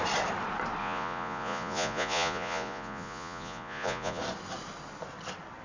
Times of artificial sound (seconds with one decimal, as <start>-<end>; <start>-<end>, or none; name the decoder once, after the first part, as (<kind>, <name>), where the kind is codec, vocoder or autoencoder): 0.8-4.2 (vocoder, Vocos)